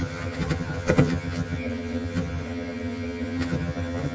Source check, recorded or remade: remade